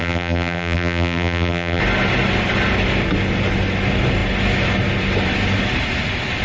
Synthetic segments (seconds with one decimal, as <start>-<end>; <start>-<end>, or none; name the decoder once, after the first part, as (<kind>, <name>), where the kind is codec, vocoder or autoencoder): 0.0-1.8 (vocoder, BigVGAN v2)